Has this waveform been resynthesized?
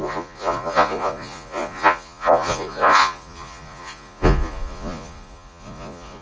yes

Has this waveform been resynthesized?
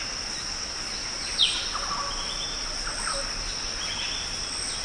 no